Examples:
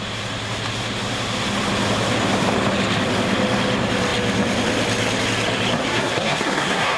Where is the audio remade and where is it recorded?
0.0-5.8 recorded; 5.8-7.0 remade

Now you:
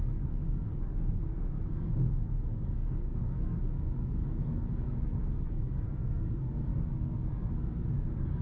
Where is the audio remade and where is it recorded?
0.0-8.4 remade

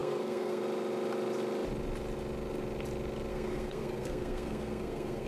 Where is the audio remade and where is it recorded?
0.0-0.6 remade; 0.6-3.3 recorded; 3.3-5.3 remade

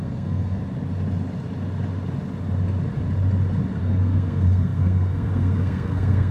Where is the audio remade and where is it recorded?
0.0-0.6 remade; 0.6-3.8 recorded; 3.8-6.3 remade